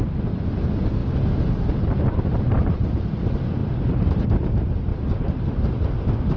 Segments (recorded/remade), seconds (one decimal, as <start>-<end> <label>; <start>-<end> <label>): 0.0-3.6 recorded; 3.6-4.5 remade; 4.5-4.9 recorded; 4.9-5.9 remade; 5.9-6.4 recorded